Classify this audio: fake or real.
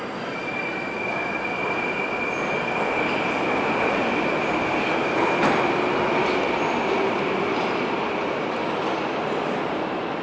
real